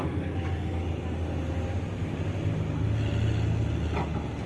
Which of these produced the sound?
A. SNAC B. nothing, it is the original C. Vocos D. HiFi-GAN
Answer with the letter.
B